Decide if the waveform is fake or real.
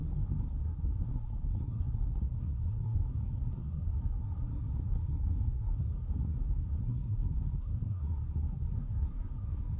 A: fake